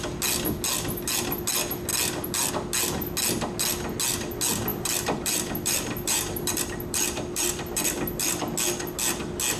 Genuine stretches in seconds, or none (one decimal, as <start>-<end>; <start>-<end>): 0.0-4.7; 8.4-9.6